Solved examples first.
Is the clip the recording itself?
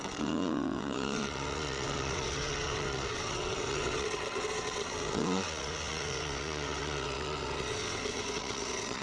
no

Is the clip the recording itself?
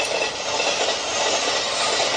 yes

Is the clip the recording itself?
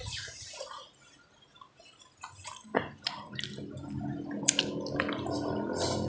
yes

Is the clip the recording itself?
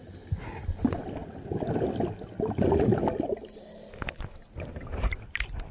yes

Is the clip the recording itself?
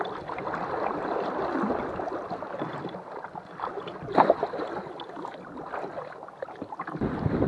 yes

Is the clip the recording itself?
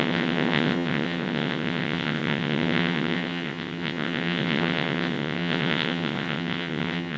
no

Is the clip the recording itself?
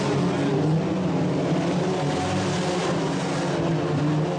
yes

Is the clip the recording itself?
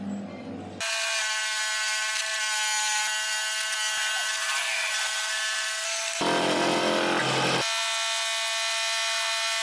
yes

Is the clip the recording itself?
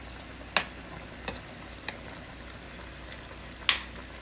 yes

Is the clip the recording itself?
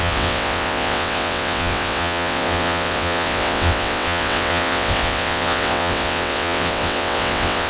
no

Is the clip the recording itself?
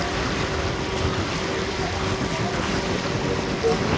yes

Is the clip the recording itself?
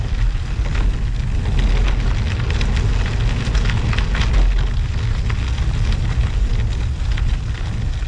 yes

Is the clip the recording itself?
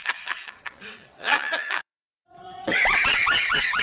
no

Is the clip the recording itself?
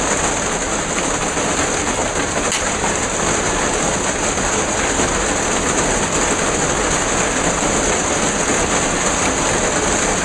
yes